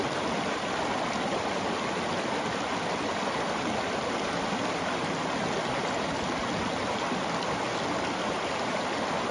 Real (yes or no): yes